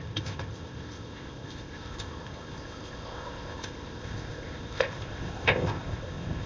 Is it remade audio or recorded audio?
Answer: remade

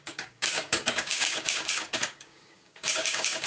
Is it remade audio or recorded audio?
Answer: remade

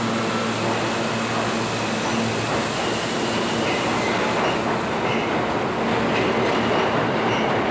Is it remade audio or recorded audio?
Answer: recorded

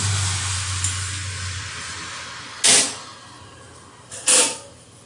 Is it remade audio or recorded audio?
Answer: recorded